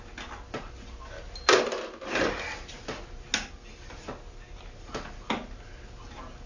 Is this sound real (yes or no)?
yes